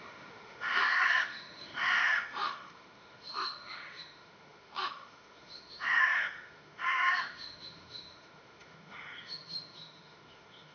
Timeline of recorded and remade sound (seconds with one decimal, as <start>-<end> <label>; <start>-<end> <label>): 0.0-10.7 remade